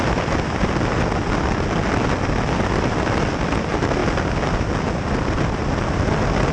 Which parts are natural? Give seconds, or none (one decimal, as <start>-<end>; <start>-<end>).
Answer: 0.0-6.5